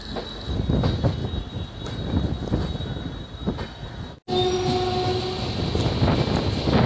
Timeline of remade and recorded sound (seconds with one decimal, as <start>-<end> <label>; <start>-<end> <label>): 0.0-6.9 recorded